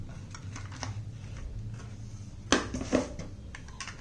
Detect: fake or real real